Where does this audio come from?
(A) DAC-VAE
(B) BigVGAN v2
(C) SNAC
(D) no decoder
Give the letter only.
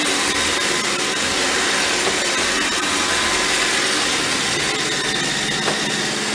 D